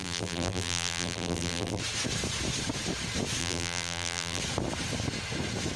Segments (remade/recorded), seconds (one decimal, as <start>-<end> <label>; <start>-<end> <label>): 0.0-1.8 remade; 1.8-3.4 recorded; 3.4-4.4 remade; 4.4-5.8 recorded